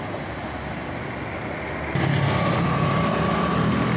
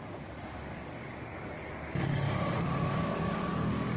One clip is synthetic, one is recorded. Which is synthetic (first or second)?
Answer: second